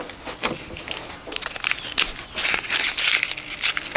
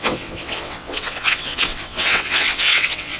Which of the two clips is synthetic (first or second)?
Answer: second